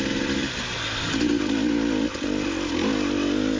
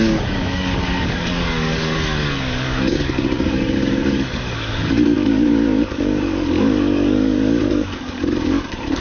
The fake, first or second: second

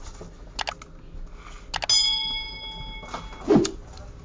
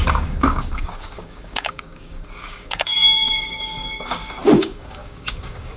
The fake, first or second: second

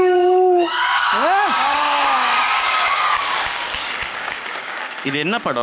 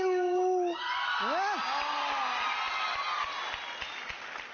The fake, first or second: first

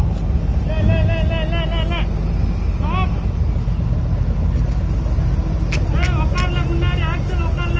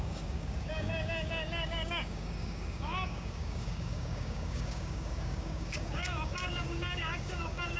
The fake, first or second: second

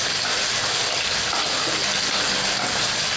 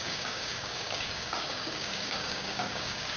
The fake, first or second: second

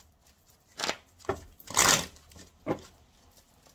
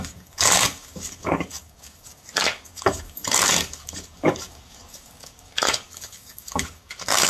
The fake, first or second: second